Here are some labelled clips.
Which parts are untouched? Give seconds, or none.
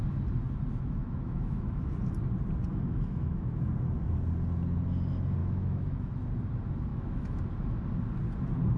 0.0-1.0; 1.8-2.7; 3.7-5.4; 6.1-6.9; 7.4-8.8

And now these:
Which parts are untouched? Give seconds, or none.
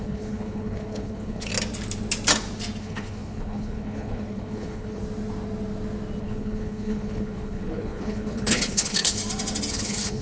1.5-2.8; 5.0-6.2; 9.2-9.7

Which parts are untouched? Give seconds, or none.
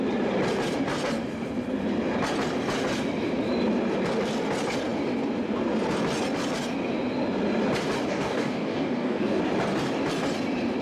0.0-8.1; 9.4-10.8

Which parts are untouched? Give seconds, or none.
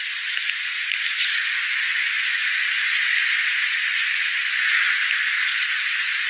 0.0-1.9; 2.8-3.9; 4.9-6.3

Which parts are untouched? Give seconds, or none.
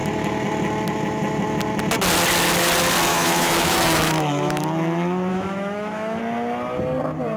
0.0-3.1; 4.6-5.3; 6.2-7.4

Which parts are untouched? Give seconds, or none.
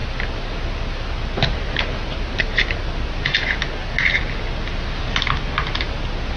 0.0-6.4